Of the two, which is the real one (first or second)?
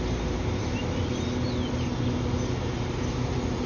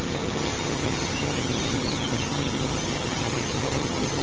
first